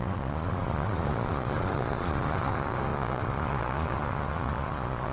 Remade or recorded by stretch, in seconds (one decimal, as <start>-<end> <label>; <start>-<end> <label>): 0.0-5.1 remade